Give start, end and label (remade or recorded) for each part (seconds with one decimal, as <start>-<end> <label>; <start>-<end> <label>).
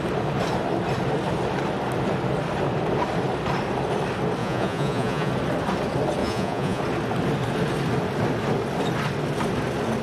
0.0-4.4 recorded; 4.4-5.3 remade; 5.3-6.2 recorded; 6.2-6.8 remade; 6.8-10.0 recorded